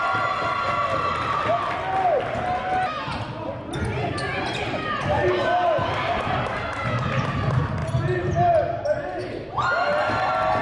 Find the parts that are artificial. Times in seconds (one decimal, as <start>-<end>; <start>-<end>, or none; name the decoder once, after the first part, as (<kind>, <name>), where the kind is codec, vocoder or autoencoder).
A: none